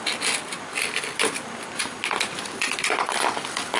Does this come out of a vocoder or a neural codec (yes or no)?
no